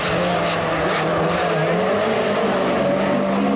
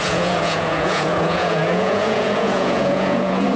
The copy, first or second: second